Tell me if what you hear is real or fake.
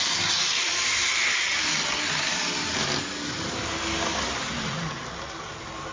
real